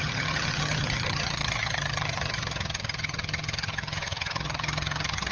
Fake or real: fake